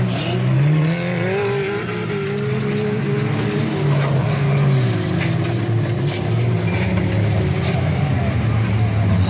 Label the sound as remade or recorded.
recorded